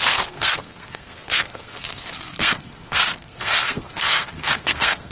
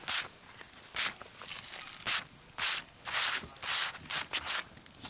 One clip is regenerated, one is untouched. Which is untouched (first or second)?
second